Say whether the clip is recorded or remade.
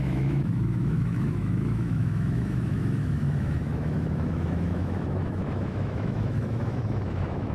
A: remade